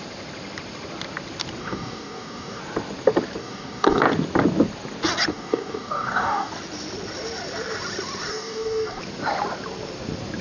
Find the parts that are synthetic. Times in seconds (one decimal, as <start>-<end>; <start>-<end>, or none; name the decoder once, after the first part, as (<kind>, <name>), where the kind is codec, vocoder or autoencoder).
1.6-2.6 (codec, DAC); 3.4-4.0; 5.3-6.5; 8.3-9.0